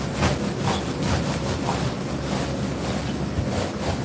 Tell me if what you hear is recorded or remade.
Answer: recorded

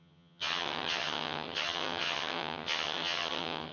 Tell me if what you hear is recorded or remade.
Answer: remade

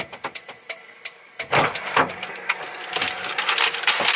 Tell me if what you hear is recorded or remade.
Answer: recorded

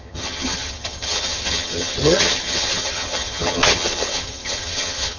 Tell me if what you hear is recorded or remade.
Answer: remade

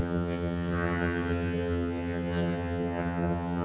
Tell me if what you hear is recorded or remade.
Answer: remade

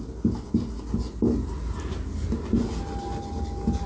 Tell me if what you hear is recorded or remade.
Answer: recorded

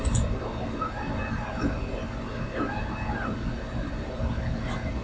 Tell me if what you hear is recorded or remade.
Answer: recorded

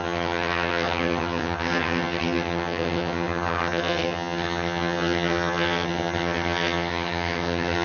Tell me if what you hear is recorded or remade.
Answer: remade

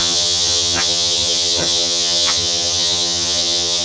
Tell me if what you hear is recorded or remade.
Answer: remade